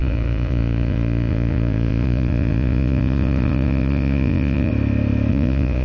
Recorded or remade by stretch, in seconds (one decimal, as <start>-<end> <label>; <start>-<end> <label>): 0.0-4.7 remade; 4.7-5.3 recorded; 5.3-5.8 remade